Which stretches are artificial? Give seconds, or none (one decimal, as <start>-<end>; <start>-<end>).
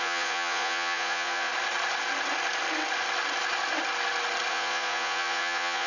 0.0-1.5; 4.5-5.9